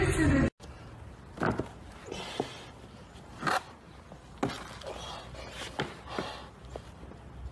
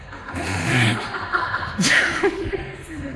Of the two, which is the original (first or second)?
first